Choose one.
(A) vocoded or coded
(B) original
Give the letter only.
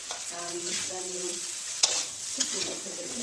A